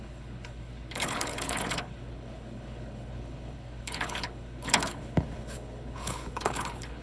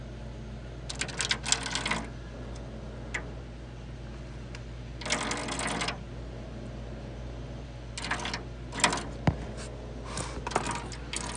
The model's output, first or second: first